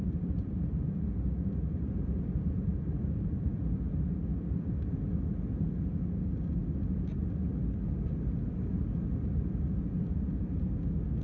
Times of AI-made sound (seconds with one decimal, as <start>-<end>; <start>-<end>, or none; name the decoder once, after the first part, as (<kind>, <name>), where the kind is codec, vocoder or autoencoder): none